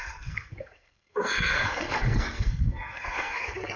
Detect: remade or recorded remade